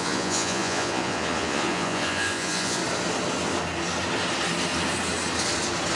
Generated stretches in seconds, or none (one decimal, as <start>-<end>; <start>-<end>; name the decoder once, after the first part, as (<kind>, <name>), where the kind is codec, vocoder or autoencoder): 0.0-2.8 (vocoder, Vocos)